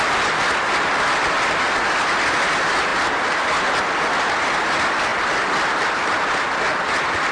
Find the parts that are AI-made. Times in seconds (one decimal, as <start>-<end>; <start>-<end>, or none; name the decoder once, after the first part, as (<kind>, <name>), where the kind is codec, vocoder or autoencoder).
none